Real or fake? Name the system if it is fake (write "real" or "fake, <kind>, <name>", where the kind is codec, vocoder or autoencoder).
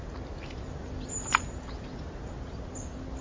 real